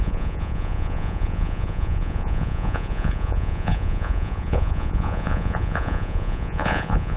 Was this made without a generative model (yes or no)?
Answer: no